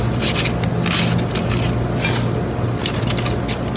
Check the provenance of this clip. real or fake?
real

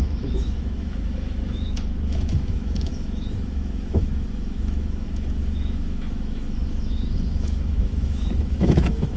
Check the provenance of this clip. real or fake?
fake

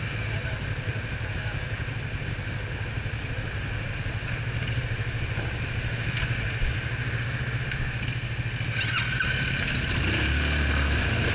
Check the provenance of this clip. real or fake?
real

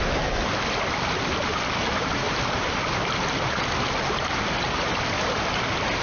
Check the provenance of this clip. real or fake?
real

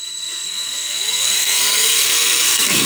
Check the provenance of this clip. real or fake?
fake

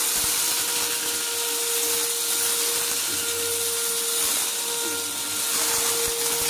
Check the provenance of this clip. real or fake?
real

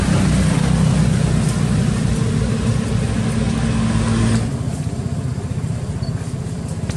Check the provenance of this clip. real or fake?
real